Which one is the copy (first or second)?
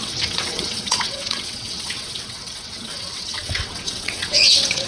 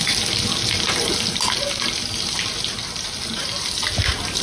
first